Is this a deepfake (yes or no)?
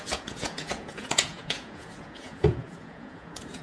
yes